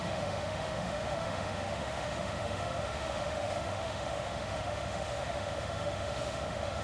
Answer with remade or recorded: remade